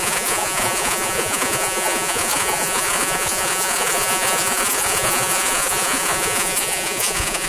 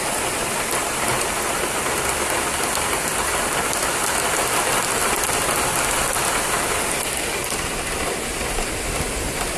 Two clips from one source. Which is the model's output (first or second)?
first